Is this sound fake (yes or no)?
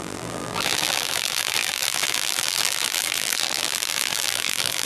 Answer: yes